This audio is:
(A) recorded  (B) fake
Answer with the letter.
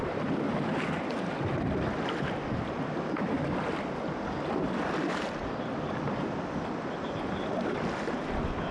A